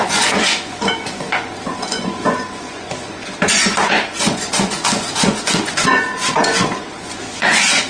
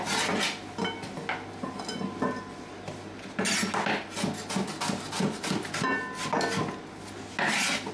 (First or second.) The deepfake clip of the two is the first